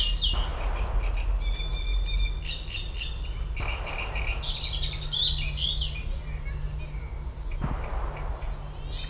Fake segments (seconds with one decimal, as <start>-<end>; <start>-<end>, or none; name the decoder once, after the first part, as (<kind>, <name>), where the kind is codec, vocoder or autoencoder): 0.5-1.1 (vocoder, BigVGAN v2)